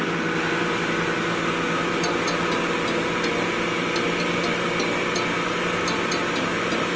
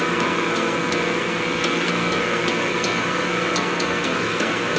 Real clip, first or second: first